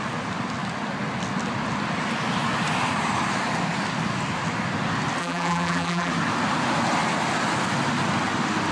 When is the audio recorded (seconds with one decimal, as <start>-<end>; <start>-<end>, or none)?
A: 0.0-5.2; 6.1-8.7